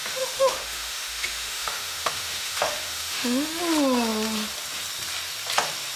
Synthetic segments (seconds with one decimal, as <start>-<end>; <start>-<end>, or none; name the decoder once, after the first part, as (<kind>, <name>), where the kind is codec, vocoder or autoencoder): 0.0-3.6 (autoencoder, DAC-VAE)